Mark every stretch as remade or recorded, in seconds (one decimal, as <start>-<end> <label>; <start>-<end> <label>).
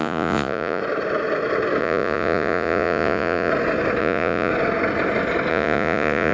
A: 0.0-0.8 remade; 0.8-1.8 recorded; 1.8-3.5 remade; 3.5-4.0 recorded; 4.0-4.5 remade; 4.5-5.5 recorded; 5.5-6.3 remade